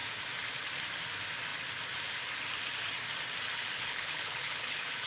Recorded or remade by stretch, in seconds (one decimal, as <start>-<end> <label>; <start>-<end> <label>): 0.0-3.7 recorded; 3.7-5.1 remade